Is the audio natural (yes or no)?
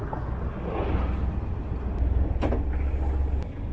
yes